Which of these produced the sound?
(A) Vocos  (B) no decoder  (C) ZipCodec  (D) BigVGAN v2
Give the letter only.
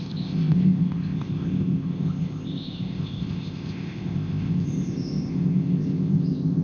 C